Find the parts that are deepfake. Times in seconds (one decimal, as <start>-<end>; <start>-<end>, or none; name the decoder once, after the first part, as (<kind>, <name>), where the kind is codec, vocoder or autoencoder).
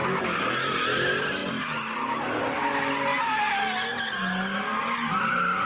none